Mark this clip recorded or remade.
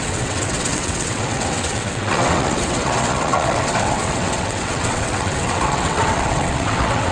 remade